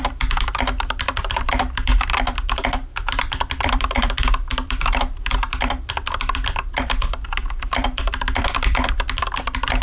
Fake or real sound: fake